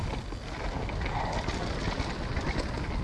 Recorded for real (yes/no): yes